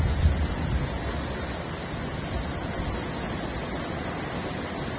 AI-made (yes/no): no